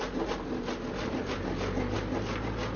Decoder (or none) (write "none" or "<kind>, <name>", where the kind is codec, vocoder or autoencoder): none